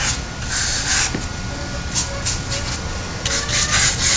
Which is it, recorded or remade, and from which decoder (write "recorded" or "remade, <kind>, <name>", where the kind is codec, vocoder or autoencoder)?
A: recorded